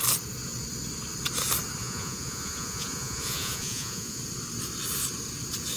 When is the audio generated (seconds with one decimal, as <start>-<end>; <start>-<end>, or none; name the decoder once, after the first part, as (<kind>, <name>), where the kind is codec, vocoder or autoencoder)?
1.8-4.2 (vocoder, Vocos)